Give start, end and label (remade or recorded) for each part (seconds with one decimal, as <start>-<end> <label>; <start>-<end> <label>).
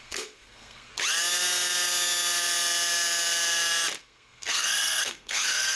0.0-0.9 remade; 0.9-4.0 recorded; 4.0-5.8 remade